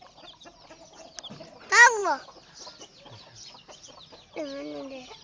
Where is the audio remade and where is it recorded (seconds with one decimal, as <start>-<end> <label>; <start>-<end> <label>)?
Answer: 0.0-5.2 recorded